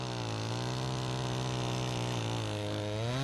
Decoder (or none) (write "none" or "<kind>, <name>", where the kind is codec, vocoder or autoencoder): none